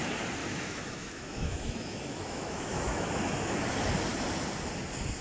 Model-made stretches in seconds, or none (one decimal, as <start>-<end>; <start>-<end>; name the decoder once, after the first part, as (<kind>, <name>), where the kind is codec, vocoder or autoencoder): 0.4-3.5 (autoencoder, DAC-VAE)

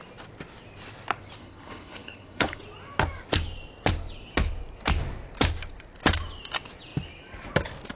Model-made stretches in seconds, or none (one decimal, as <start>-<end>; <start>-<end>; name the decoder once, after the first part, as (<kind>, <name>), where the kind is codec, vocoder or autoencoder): 1.4-2.6 (codec, HILCodec)

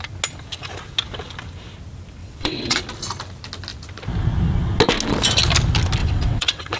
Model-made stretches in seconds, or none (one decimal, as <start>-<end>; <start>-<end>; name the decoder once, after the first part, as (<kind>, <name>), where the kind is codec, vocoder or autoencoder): 2.2-2.8 (vocoder, WaveNeXt); 6.0-6.8